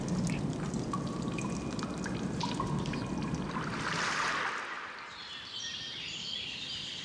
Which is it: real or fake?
real